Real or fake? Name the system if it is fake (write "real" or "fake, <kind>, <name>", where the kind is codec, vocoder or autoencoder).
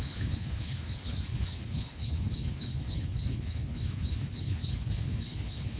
fake, codec, HILCodec